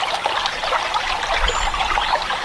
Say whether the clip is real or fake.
real